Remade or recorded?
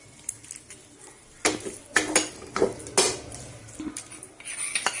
recorded